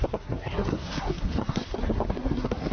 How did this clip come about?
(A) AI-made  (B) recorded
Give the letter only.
A